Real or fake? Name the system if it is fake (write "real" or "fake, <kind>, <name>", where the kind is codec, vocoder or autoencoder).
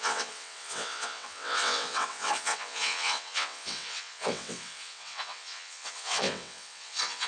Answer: fake, vocoder, WaveNeXt